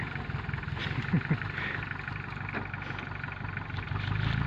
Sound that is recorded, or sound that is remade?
recorded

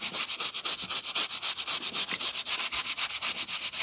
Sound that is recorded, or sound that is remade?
recorded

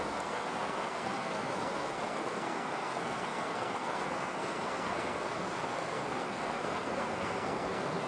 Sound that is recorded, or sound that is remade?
remade